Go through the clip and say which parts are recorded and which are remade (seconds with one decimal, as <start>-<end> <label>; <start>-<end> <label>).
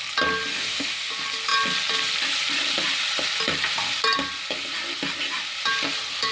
0.0-0.5 recorded; 0.5-1.1 remade; 1.1-6.3 recorded